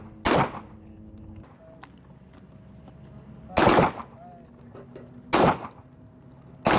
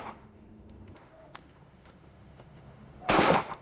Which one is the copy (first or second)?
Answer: second